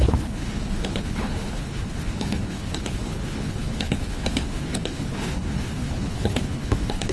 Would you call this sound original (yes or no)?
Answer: no